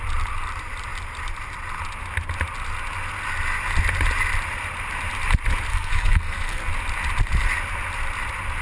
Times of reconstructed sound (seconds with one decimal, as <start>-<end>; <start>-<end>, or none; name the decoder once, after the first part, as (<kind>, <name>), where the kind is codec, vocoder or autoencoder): 5.7-6.7 (codec, SNAC)